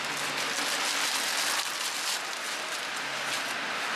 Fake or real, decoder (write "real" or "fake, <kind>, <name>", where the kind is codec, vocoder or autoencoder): real